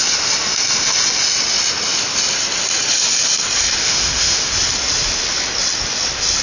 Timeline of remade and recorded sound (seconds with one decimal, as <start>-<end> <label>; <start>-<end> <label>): 0.0-3.8 recorded; 3.8-4.5 remade; 4.5-6.4 recorded